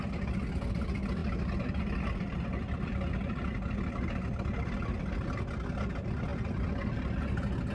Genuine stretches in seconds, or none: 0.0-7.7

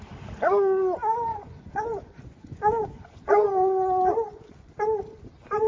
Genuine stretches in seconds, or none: 0.0-1.3; 4.7-5.7

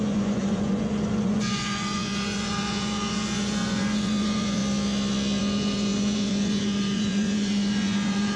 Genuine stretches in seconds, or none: 4.6-5.4

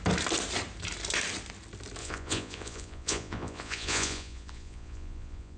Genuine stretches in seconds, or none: 0.0-2.0

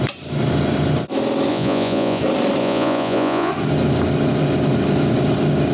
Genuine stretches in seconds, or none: 0.0-1.5; 2.2-2.6; 3.5-5.7